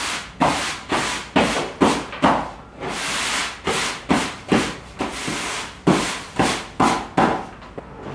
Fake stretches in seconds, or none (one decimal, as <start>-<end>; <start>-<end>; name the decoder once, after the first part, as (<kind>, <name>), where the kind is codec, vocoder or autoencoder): none